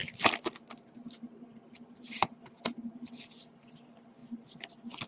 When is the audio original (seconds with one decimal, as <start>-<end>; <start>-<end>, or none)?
0.0-5.1